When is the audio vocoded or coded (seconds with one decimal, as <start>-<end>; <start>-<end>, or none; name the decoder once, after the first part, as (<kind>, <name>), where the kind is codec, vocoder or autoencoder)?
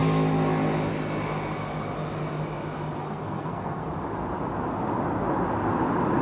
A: 3.0-3.9 (codec, SNAC)